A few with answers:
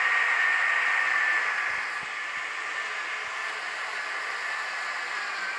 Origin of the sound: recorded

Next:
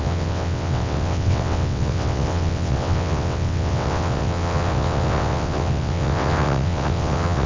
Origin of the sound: remade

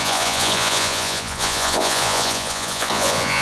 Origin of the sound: remade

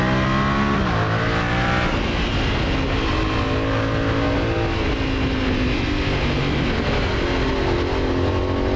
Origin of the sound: recorded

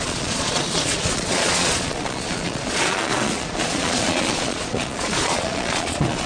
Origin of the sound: remade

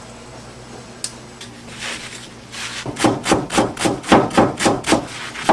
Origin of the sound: recorded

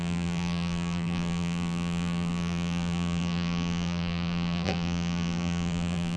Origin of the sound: remade